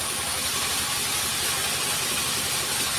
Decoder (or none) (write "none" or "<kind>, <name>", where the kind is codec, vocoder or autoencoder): none